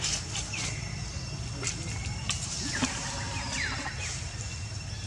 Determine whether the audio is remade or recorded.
recorded